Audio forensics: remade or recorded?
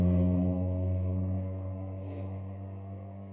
remade